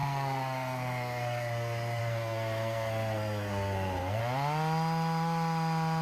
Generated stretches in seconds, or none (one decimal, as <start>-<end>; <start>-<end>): 0.0-4.2